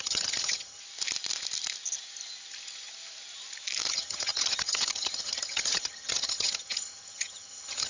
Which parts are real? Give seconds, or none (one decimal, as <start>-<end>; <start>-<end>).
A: 0.8-3.9